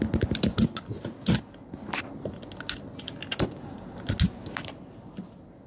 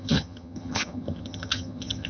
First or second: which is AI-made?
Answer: second